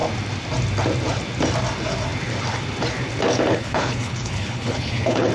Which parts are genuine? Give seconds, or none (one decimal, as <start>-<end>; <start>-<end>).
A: 0.0-3.5